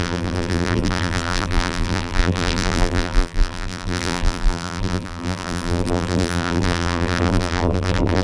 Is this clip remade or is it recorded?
remade